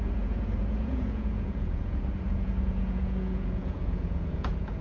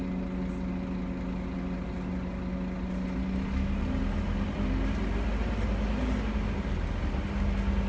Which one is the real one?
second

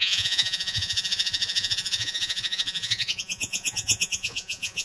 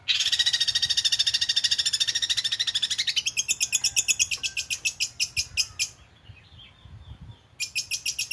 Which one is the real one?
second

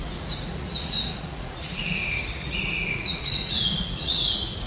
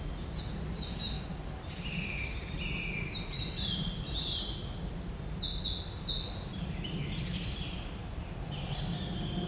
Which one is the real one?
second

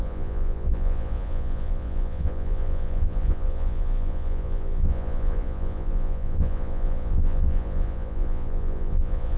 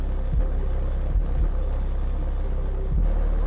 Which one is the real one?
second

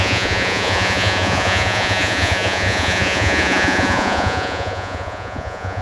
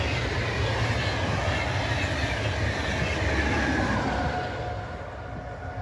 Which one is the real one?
second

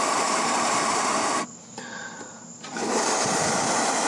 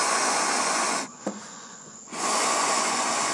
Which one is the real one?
first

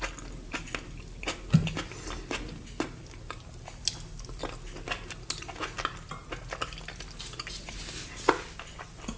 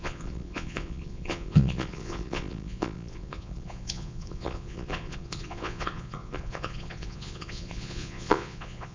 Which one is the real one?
first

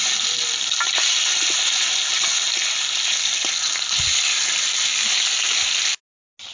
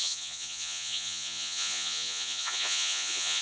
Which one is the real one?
first